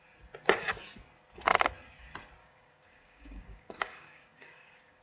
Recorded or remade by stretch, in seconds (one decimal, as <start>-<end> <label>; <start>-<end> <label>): 0.0-2.4 recorded; 2.4-5.0 remade